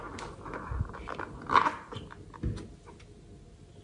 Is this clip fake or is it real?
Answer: real